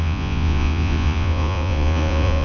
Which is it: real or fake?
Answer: fake